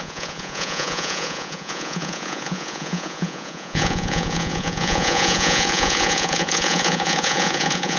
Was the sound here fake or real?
fake